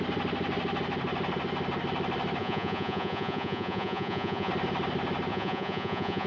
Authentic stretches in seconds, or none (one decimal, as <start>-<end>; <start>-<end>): 0.0-2.4; 4.5-5.3